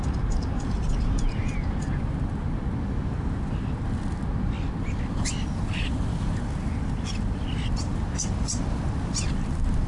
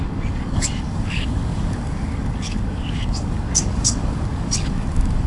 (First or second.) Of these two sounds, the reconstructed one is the second